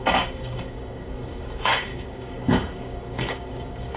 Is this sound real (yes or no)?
no